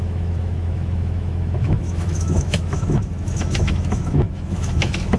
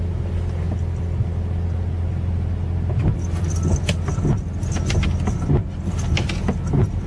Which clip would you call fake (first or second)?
first